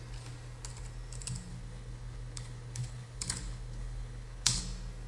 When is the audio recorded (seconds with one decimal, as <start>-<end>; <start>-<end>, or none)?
0.0-1.5; 4.6-5.1